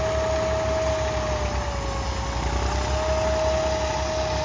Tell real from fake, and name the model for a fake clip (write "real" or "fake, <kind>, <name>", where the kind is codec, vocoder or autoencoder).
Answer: real